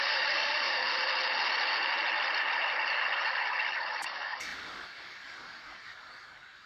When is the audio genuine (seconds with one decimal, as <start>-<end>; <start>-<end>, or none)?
0.9-4.0